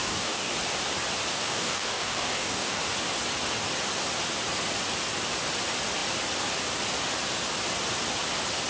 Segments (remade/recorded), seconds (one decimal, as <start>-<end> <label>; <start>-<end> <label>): 0.0-0.5 remade; 0.5-1.3 recorded; 1.3-2.8 remade; 2.8-8.7 recorded